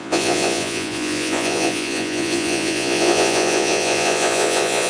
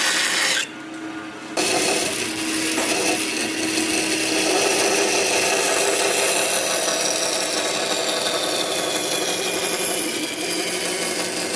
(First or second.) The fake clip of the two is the first